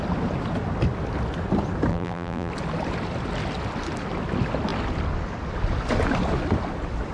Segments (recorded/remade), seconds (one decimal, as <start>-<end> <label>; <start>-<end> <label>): 0.0-1.9 recorded; 1.9-2.5 remade; 2.5-7.1 recorded